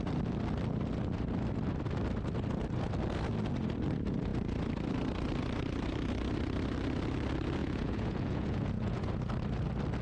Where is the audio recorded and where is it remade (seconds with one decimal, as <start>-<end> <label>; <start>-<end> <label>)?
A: 0.0-7.6 recorded; 7.6-9.1 remade; 9.1-10.0 recorded